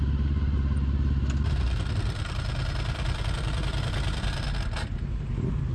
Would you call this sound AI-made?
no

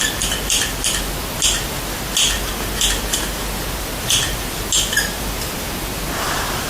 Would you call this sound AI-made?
no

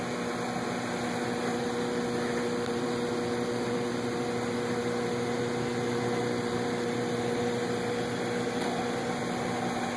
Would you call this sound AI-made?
yes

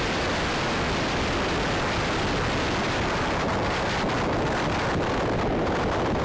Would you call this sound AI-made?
no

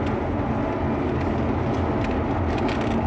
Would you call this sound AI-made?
no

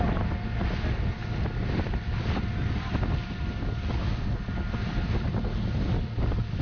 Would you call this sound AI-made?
no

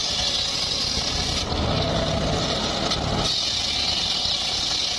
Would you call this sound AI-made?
no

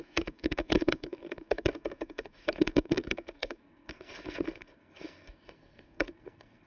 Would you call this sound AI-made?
yes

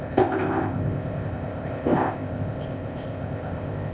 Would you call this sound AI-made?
yes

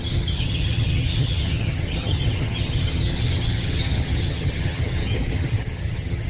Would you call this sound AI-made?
yes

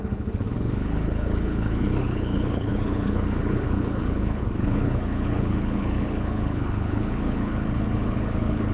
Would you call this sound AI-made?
yes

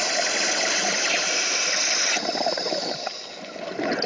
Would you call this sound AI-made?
no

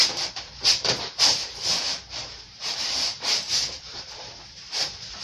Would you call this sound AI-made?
yes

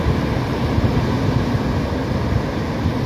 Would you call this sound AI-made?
no